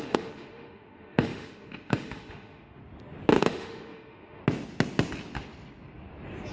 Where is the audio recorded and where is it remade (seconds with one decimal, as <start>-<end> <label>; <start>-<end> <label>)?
0.0-2.8 remade; 2.8-3.4 recorded; 3.4-4.4 remade; 4.4-6.5 recorded